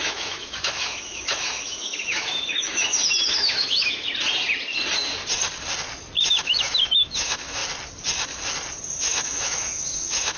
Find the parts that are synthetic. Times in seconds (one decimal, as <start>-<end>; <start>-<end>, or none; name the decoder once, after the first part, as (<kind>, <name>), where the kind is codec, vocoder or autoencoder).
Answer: 0.0-4.1 (autoencoder, DAC-VAE); 6.4-7.6; 9.0-10.4

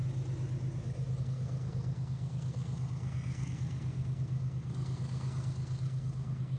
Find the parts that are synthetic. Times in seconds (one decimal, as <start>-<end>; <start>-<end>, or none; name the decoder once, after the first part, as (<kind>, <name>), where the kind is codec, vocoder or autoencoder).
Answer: 1.2-6.6 (codec, SNAC)

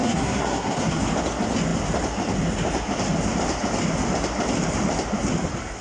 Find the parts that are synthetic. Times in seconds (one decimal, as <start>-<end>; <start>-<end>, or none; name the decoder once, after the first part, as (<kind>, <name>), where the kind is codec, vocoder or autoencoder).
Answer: 0.0-1.0 (codec, SNAC)

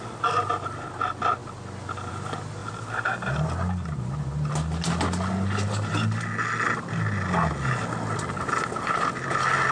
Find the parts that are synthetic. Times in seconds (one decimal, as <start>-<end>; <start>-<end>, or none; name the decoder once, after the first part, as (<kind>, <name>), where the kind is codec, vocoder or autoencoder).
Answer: none